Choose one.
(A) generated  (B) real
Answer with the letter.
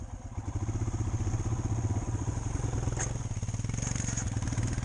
B